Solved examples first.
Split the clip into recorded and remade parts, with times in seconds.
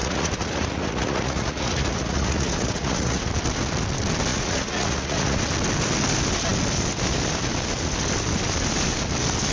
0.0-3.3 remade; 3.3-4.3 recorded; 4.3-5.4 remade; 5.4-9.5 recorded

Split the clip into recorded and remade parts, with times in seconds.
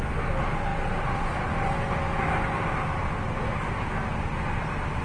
0.0-5.0 recorded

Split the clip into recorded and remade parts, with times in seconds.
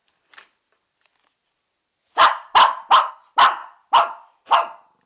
0.0-5.1 recorded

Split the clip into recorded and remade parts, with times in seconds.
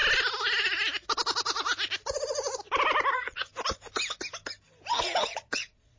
0.0-3.1 recorded; 3.1-3.5 remade; 3.5-5.3 recorded; 5.3-6.0 remade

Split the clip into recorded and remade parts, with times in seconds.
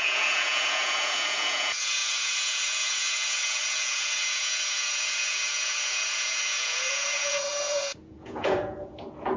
0.0-9.4 remade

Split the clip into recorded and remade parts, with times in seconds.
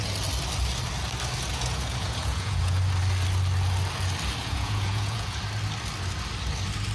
0.0-1.5 recorded; 1.5-2.8 remade; 2.8-4.4 recorded; 4.4-5.4 remade; 5.4-6.9 recorded